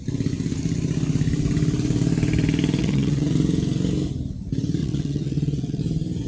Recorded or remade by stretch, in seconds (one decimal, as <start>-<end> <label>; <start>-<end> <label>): 0.0-2.8 recorded; 2.8-3.3 remade; 3.3-4.8 recorded; 4.8-5.8 remade; 5.8-6.3 recorded